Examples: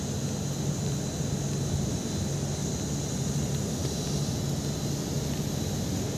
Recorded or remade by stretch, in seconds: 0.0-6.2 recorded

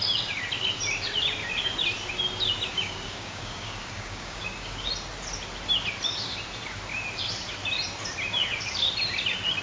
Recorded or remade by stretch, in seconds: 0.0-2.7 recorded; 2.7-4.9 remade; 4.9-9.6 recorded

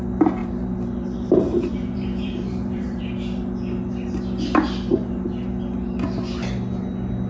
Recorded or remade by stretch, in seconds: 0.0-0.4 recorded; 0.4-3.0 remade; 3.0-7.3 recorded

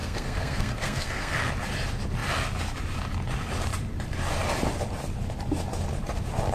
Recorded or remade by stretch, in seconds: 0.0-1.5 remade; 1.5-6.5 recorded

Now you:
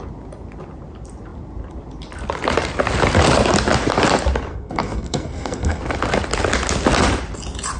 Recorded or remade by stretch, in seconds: 0.0-4.5 recorded; 4.5-5.8 remade; 5.8-7.8 recorded

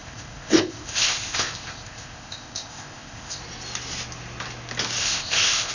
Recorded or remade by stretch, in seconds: 0.0-3.4 remade; 3.4-5.0 recorded; 5.0-5.7 remade